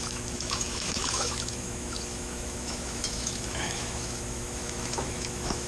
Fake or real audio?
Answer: fake